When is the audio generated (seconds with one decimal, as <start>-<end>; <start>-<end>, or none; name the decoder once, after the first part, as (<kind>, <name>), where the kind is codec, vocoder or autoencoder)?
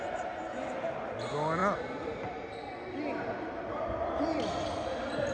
none